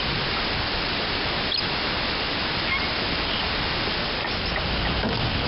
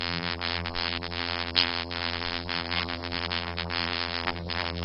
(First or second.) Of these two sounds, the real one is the first